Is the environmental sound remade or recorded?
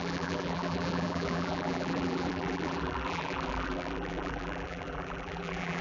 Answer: remade